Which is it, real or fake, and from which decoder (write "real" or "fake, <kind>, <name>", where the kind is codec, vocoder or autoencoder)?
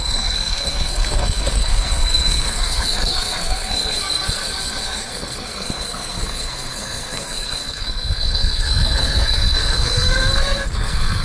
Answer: fake, codec, SNAC